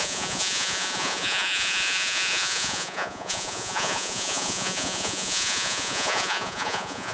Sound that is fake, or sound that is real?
fake